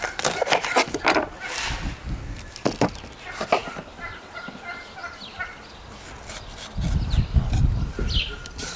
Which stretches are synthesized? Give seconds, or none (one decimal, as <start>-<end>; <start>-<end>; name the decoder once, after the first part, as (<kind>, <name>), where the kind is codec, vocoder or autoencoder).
none